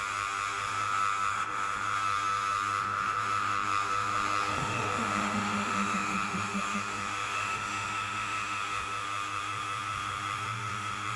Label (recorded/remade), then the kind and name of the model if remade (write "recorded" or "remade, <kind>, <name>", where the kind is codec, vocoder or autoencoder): remade, autoencoder, DAC-VAE